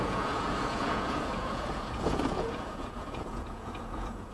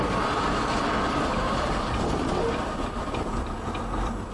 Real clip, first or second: second